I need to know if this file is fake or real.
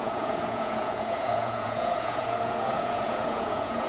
fake